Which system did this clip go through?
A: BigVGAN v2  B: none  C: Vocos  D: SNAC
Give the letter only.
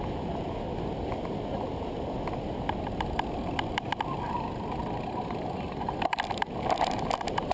B